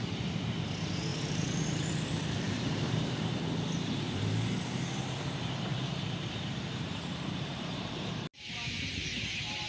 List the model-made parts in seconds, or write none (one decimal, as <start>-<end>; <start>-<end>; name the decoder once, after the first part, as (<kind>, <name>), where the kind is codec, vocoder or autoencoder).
1.1-3.0 (vocoder, BigVGAN v2); 5.7-8.4